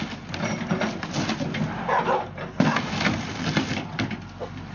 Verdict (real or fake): real